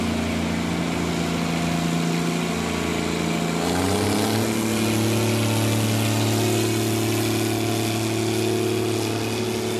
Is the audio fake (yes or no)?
no